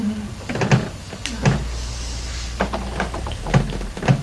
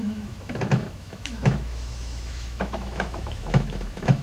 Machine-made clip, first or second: second